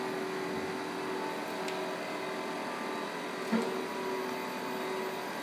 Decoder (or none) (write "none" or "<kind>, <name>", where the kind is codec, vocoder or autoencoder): none